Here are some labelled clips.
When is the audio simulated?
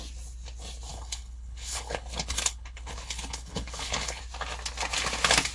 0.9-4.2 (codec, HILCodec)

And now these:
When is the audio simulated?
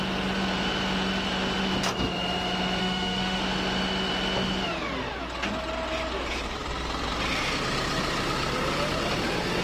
2.8-3.4 (autoencoder, DAC-VAE)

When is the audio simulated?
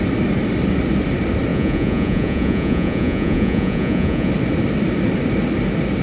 1.5-4.3 (vocoder, Vocos)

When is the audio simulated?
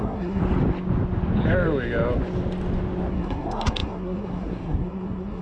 0.0-0.4 (codec, SNAC); 3.1-5.4